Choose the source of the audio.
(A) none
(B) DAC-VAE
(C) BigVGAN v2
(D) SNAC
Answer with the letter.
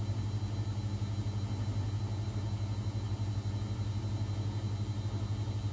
A